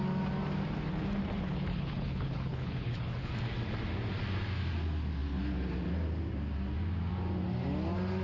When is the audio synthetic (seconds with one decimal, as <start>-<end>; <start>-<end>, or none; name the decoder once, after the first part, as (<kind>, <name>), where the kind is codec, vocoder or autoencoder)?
1.7-3.3 (codec, HILCodec)